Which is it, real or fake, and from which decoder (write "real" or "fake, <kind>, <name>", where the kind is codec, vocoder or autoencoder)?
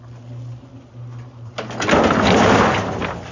real